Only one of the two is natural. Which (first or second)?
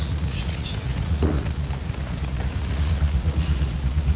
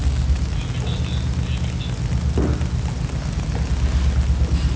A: second